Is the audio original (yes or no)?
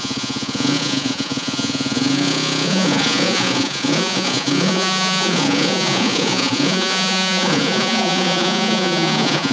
no